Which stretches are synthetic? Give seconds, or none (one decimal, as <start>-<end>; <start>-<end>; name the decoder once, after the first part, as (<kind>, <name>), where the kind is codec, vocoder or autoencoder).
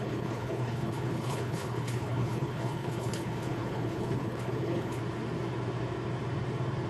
0.0-5.0 (codec, HILCodec)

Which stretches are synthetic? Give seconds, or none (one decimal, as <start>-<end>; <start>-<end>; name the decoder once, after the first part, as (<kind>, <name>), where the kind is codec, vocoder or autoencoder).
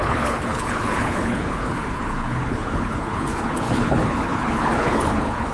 0.0-5.5 (codec, HILCodec)